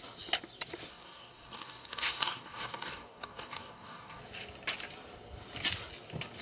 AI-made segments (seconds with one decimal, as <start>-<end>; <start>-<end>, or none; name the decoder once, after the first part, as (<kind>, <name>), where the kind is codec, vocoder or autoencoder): 0.9-4.2 (codec, DAC)

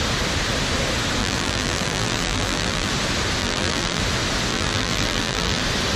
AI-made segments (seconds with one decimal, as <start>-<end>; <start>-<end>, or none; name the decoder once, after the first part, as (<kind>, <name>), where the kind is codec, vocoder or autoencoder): 1.2-2.9 (vocoder, BigVGAN v2); 3.4-4.0; 4.5-5.6

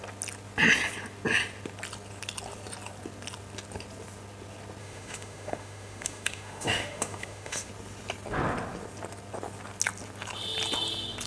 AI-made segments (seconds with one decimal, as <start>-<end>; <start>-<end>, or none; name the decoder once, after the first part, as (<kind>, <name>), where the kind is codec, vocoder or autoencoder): 4.8-7.7 (autoencoder, DAC-VAE)

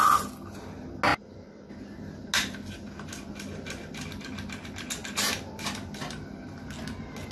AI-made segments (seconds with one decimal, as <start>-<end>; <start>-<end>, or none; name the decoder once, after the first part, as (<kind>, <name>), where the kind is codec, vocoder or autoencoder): 1.1-1.7 (vocoder, BigVGAN v2)

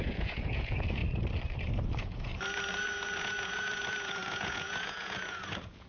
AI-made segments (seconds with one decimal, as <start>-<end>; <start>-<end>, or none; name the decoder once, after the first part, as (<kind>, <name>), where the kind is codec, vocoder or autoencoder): 0.0-1.0 (vocoder, Vocos); 1.8-2.3; 3.2-5.9

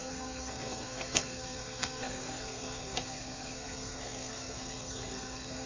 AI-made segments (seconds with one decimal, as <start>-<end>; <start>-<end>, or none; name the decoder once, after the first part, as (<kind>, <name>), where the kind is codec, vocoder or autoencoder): 0.0-5.7 (codec, SNAC)